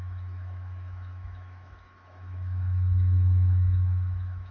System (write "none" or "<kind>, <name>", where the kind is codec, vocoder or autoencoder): autoencoder, DAC-VAE